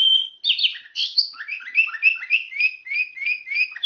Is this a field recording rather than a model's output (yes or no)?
yes